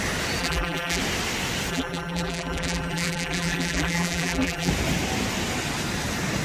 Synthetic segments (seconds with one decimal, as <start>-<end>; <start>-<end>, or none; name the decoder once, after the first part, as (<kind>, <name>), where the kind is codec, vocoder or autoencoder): 0.4-1.0 (vocoder, BigVGAN v2); 1.7-4.7